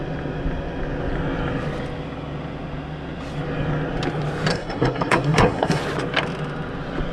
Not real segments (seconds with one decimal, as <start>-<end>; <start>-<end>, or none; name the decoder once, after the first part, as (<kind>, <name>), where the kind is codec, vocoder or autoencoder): 4.5-5.8 (codec, SNAC)